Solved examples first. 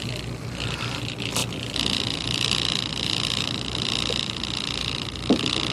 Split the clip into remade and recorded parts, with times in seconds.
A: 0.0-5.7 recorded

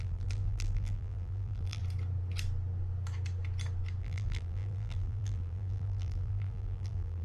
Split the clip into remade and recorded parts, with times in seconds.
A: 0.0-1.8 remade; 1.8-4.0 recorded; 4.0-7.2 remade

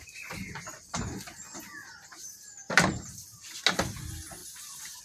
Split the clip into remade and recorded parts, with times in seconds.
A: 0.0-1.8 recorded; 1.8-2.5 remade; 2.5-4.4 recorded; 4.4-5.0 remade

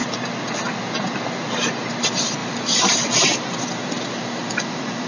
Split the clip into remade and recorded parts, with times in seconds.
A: 0.0-2.4 recorded; 2.4-3.6 remade; 3.6-5.1 recorded